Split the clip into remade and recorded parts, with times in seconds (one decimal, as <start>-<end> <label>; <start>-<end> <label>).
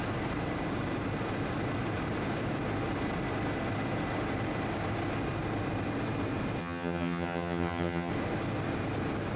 0.0-6.6 recorded; 6.6-8.1 remade; 8.1-9.4 recorded